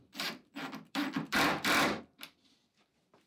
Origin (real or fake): fake